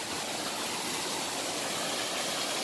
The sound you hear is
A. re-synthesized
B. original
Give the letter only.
B